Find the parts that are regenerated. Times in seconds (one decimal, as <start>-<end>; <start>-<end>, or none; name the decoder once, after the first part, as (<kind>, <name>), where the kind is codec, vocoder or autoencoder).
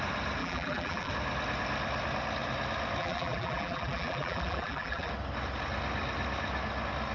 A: 0.4-1.1 (vocoder, BigVGAN v2); 3.0-5.1